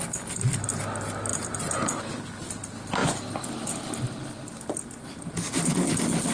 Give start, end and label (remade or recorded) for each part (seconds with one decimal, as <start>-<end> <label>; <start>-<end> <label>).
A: 0.0-1.3 recorded; 1.3-2.1 remade; 2.1-6.3 recorded